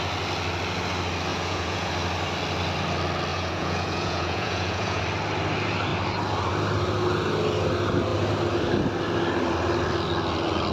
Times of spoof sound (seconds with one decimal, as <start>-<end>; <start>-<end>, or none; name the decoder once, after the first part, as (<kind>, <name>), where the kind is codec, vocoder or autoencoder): 1.3-1.9 (vocoder, Vocos); 3.3-5.0

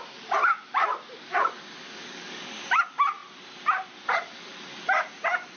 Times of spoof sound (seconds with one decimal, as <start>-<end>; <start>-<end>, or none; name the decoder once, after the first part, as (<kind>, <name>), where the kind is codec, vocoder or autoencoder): 1.8-2.7 (codec, DAC)

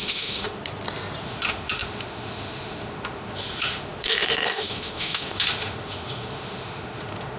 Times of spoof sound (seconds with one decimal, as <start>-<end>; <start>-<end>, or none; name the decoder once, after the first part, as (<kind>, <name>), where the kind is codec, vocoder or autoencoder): 0.0-0.6 (autoencoder, DAC-VAE); 1.2-7.4

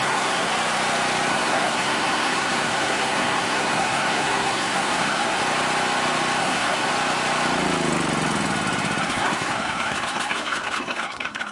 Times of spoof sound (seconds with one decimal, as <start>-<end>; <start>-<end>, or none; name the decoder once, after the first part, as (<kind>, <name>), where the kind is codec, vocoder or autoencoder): 0.0-0.5 (codec, SNAC); 1.3-5.4; 6.4-6.9; 9.0-11.5

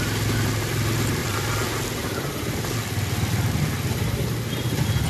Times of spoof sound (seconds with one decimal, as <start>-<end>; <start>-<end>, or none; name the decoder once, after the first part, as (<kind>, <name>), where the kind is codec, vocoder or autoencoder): 1.2-3.6 (vocoder, BigVGAN v2)